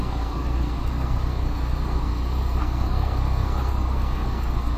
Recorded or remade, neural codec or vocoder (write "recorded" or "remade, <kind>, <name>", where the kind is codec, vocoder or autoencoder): remade, codec, SNAC